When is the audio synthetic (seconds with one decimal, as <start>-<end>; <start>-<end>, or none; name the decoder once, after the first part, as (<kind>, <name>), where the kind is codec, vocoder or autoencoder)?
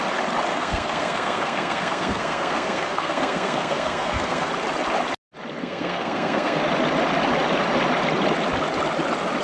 0.5-4.5 (codec, SNAC); 5.6-6.6